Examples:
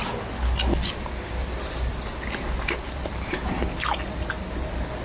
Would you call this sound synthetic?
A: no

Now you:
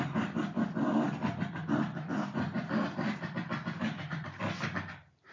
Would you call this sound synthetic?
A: yes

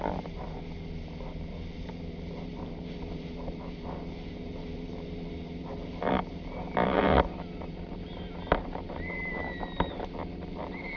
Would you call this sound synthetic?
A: yes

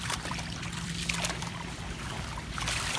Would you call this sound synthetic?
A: yes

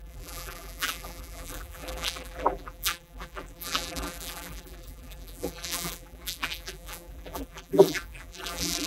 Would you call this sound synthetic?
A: yes